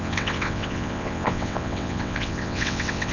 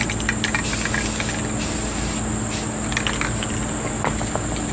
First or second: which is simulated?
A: first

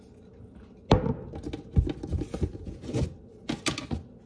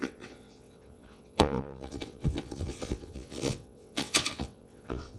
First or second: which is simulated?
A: second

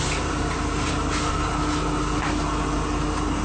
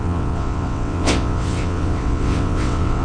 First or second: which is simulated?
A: second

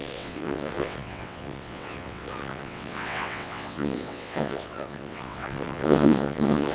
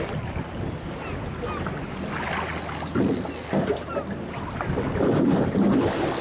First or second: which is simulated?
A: first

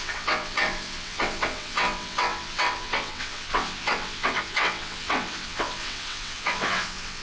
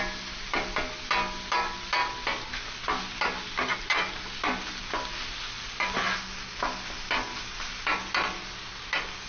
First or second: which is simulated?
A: first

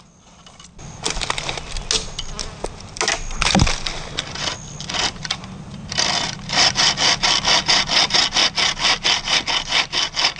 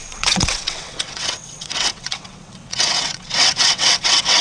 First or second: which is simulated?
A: second